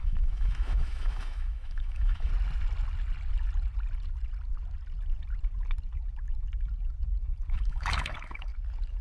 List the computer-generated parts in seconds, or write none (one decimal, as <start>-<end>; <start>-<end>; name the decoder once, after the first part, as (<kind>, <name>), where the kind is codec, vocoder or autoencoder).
0.0-2.3 (autoencoder, DAC-VAE); 7.5-8.5